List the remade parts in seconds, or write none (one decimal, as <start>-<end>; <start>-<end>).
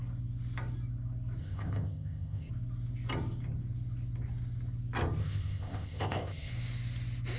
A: 1.4-2.5; 5.2-6.5